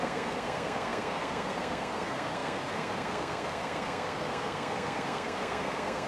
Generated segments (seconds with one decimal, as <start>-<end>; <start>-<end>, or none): 0.0-6.1